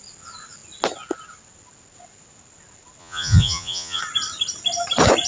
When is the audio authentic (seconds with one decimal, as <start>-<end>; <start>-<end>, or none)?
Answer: 0.0-3.0; 4.0-5.3